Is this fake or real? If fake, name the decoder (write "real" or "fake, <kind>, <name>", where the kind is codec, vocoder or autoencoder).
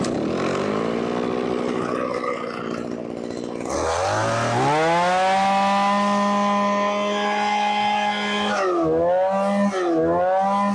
real